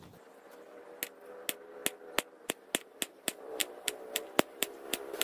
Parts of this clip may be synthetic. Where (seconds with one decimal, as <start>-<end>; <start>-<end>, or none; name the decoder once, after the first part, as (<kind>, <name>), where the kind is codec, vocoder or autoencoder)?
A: 3.6-5.2 (vocoder, BigVGAN v2)